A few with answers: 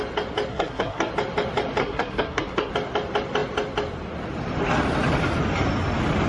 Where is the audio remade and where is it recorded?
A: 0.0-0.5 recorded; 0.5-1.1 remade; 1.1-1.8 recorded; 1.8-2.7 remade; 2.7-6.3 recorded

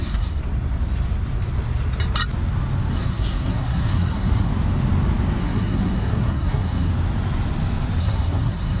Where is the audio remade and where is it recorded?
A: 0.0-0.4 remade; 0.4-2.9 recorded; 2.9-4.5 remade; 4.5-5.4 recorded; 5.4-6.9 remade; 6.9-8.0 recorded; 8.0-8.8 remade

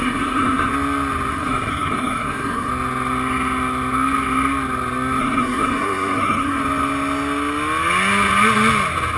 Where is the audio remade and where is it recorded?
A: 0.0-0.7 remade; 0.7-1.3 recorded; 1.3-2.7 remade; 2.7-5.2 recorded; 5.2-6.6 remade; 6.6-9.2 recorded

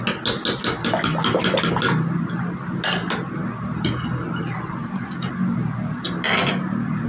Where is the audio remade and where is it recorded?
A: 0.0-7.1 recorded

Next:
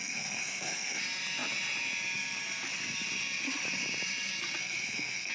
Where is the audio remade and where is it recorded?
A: 0.0-1.0 remade; 1.0-4.6 recorded; 4.6-5.3 remade